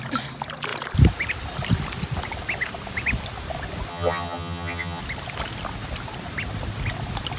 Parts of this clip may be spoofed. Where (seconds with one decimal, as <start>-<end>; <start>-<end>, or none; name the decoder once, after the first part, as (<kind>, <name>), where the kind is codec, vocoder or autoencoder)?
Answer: 3.9-5.0 (vocoder, HiFi-GAN)

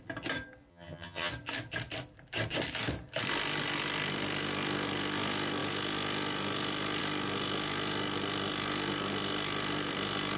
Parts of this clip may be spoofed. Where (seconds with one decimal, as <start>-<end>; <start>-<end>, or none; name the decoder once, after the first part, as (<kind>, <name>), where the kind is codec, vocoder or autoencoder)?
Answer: 0.7-1.3 (vocoder, HiFi-GAN)